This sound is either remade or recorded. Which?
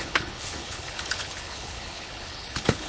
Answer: remade